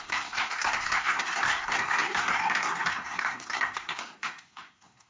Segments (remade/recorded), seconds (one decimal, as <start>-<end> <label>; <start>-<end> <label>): 0.0-5.1 remade